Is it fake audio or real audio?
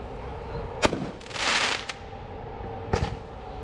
real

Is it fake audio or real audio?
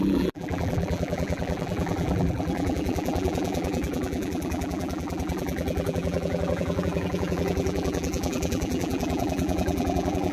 fake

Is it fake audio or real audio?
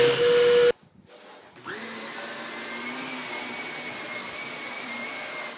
real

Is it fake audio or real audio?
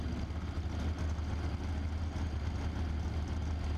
real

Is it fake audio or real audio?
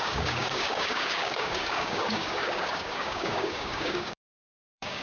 fake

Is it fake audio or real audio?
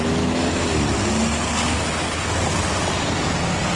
real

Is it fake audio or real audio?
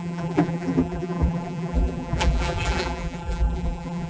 fake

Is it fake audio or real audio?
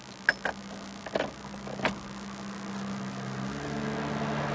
real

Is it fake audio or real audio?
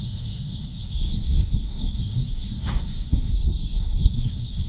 fake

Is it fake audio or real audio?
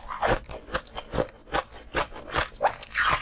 real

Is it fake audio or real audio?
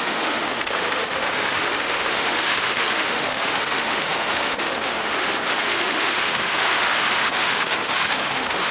fake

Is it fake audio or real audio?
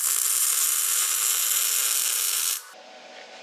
real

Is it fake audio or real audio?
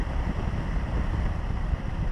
real